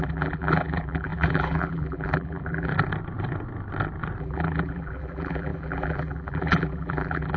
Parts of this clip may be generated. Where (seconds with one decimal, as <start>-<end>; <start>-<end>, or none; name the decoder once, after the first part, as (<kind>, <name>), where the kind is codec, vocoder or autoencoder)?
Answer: 0.0-2.7 (vocoder, BigVGAN v2); 4.2-7.4